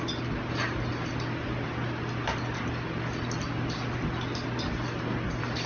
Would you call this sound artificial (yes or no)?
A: no